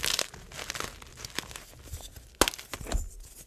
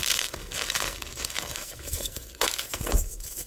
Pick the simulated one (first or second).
second